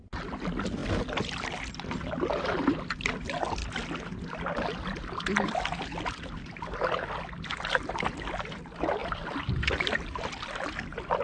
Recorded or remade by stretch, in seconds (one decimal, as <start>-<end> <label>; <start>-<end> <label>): 0.0-11.2 recorded

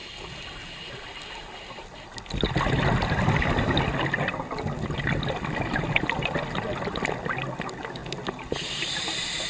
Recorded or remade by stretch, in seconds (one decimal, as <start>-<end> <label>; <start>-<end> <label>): 0.0-9.5 recorded

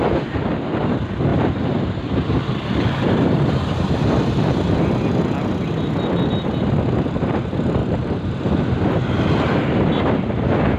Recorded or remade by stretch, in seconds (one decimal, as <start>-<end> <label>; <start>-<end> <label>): 0.0-1.3 recorded; 1.3-4.7 remade; 4.7-7.8 recorded; 7.8-8.5 remade; 8.5-10.8 recorded

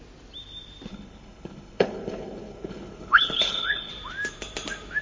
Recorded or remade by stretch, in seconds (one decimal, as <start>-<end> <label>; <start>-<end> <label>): 0.0-0.9 recorded; 0.9-3.9 remade; 3.9-5.0 recorded

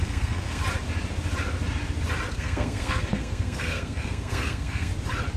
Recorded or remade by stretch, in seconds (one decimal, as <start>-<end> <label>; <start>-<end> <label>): 0.0-0.6 remade; 0.6-2.3 recorded; 2.3-4.9 remade; 4.9-5.4 recorded

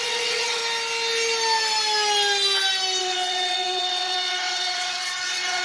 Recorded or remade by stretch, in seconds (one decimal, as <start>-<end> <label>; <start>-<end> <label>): 0.0-0.6 remade; 0.6-3.0 recorded; 3.0-5.6 remade

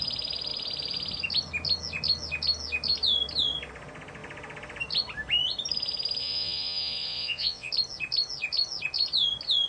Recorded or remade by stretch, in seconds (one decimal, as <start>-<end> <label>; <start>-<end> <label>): 0.0-6.2 recorded; 6.2-7.7 remade; 7.7-9.7 recorded